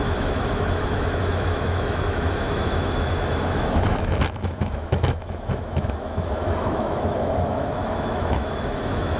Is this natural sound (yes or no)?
no